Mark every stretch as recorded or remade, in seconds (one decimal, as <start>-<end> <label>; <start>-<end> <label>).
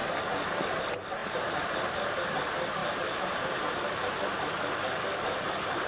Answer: 0.0-1.2 recorded; 1.2-2.2 remade; 2.2-2.8 recorded; 2.8-4.1 remade; 4.1-5.9 recorded